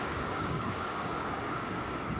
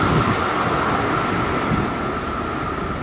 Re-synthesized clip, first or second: first